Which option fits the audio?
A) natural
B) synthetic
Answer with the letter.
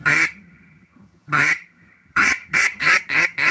B